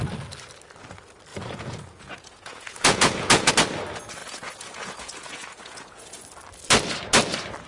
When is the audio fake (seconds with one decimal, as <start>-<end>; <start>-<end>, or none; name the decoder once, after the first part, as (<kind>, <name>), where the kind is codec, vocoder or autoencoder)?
1.3-3.5 (vocoder, Vocos); 4.2-6.2